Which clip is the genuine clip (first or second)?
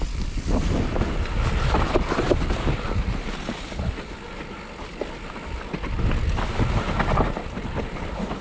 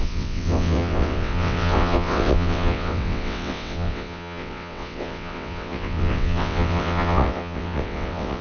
first